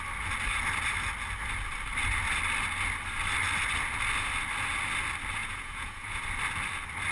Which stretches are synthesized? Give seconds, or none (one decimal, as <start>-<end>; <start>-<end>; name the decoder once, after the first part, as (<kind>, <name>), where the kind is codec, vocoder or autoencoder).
5.4-6.2 (vocoder, Vocos)